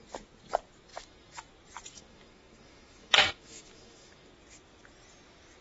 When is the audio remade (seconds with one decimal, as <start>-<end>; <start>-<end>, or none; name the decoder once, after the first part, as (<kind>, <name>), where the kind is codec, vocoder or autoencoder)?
0.9-1.5 (autoencoder, DAC-VAE); 1.9-4.3